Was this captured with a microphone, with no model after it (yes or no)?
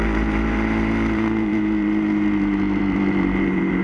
no